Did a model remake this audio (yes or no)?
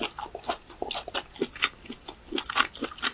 no